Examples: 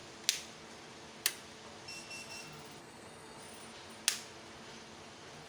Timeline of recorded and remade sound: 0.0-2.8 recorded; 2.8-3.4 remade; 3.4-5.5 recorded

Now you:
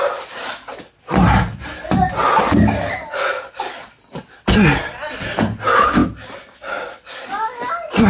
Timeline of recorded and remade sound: 0.0-8.1 recorded

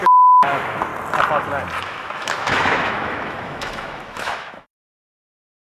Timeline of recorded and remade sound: 0.0-0.9 remade; 0.9-1.8 recorded; 1.8-5.7 remade

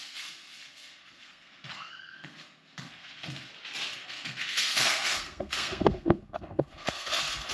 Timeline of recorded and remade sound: 0.0-3.5 remade; 3.5-3.9 recorded; 3.9-7.5 remade

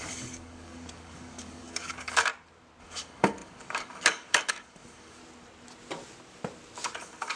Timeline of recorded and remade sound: 0.0-2.3 remade; 2.3-2.8 recorded; 2.8-5.2 remade; 5.2-7.0 recorded; 7.0-7.4 remade

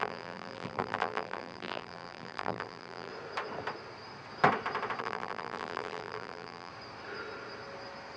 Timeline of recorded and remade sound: 0.0-3.1 remade; 3.1-5.0 recorded; 5.0-6.7 remade; 6.7-8.2 recorded

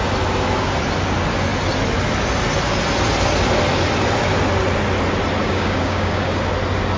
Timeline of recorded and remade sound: 0.0-5.4 recorded; 5.4-6.4 remade; 6.4-7.0 recorded